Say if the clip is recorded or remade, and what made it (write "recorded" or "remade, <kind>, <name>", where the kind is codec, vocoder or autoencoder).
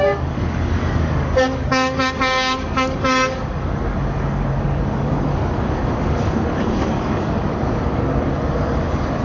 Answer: remade, codec, DAC